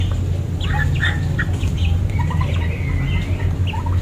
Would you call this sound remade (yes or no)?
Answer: no